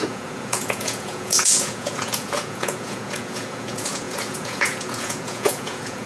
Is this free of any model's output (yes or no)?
no